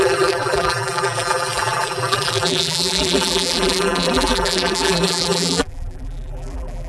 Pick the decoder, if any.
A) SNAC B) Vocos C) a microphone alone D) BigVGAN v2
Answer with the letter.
D